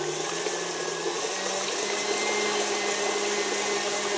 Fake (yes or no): no